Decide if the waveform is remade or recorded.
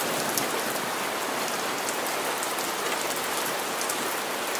recorded